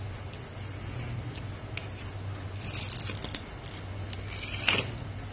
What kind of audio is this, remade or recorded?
recorded